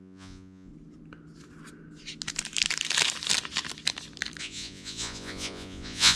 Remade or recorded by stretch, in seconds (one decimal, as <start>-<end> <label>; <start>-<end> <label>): 0.0-0.7 remade; 0.7-4.4 recorded; 4.4-6.2 remade